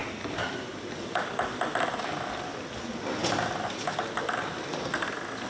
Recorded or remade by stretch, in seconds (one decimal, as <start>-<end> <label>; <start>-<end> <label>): 0.0-5.5 recorded